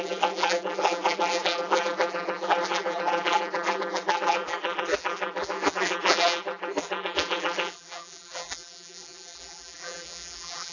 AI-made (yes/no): yes